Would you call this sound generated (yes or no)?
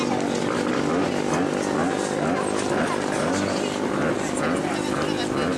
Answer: no